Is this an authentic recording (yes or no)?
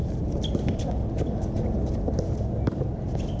yes